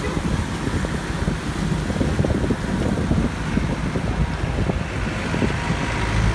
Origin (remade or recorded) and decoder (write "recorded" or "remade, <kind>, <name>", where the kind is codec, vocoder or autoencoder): recorded